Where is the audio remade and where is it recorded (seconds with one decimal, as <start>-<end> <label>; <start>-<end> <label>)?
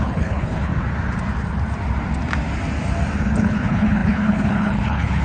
0.0-0.7 remade; 0.7-3.3 recorded; 3.3-5.2 remade